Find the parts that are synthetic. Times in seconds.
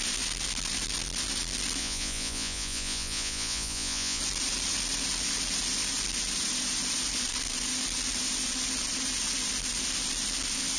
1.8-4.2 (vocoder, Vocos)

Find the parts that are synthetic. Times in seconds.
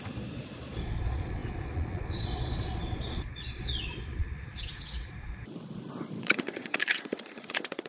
0.0-7.9 (vocoder, Vocos)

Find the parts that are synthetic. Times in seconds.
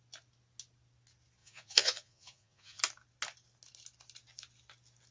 1.4-2.8 (vocoder, Vocos)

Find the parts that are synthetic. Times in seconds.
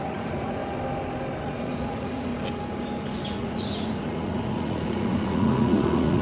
0.0-0.6 (vocoder, Vocos); 1.4-2.3; 3.4-6.2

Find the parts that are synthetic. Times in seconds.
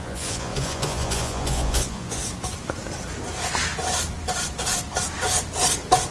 0.0-2.2 (vocoder, Vocos)